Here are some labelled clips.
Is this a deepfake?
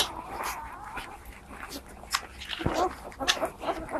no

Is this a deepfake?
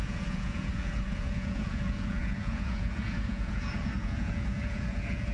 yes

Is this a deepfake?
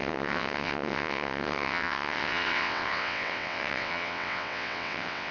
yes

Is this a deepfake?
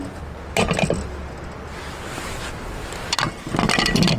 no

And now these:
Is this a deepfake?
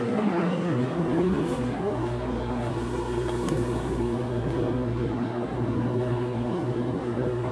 yes